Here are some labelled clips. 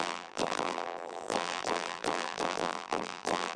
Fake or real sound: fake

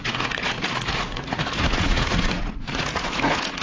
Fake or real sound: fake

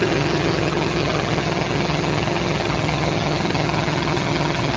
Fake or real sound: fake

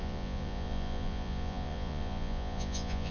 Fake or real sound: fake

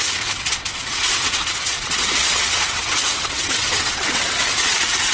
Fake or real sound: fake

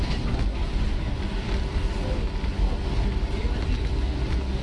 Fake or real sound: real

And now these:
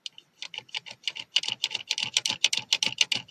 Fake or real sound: real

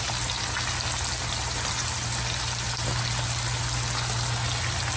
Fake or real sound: real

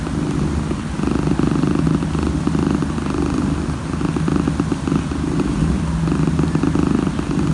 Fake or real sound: real